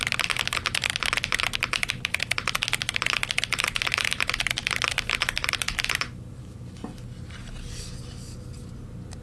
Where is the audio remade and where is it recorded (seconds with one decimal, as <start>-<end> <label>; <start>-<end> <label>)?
0.0-9.2 recorded